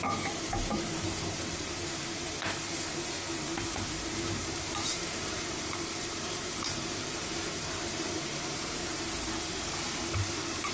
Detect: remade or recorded remade